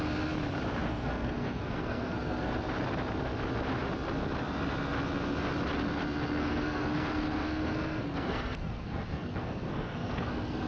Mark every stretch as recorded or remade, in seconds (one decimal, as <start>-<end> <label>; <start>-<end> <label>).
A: 0.0-0.9 recorded; 0.9-2.5 remade; 2.5-6.4 recorded; 6.4-10.7 remade